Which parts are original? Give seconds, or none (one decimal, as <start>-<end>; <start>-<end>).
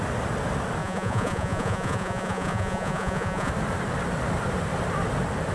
0.0-0.8; 3.5-5.5